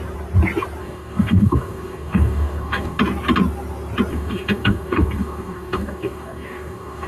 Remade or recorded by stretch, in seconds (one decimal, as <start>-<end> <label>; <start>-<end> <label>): 0.0-0.8 recorded; 0.8-3.0 remade; 3.0-4.1 recorded; 4.1-7.1 remade